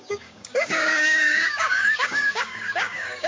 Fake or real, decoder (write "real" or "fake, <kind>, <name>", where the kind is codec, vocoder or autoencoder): fake, codec, DAC